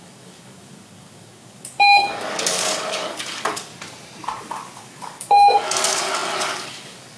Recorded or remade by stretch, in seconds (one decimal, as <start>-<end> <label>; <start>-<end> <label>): 0.0-3.7 remade; 3.7-4.8 recorded; 4.8-7.2 remade